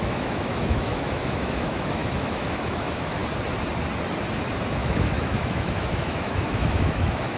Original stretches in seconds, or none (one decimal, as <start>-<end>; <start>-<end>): 3.2-4.7